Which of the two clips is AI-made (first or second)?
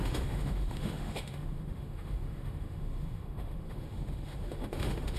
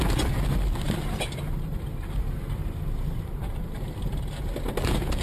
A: first